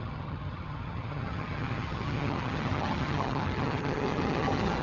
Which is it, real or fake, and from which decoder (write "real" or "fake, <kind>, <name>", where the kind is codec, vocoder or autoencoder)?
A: fake, vocoder, HiFi-GAN